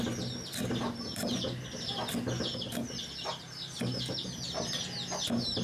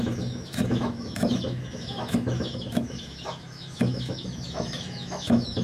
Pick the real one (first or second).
first